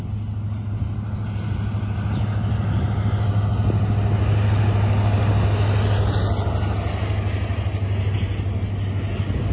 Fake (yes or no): no